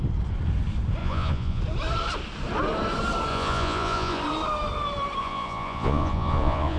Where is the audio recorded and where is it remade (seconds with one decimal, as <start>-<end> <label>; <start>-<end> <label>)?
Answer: 0.0-1.0 recorded; 1.0-1.6 remade; 1.6-3.3 recorded; 3.3-4.2 remade; 4.2-5.2 recorded; 5.2-6.8 remade